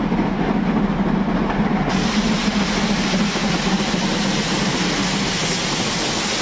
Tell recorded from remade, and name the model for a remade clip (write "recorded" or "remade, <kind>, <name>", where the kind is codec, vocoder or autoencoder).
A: recorded